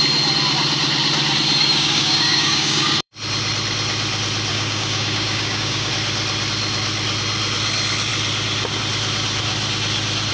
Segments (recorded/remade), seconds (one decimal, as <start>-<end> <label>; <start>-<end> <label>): 0.0-1.6 recorded; 1.6-3.1 remade; 3.1-4.5 recorded; 4.5-5.9 remade; 5.9-10.3 recorded